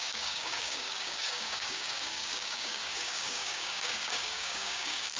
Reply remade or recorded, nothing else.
remade